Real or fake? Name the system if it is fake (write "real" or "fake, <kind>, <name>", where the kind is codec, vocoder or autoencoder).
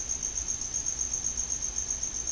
real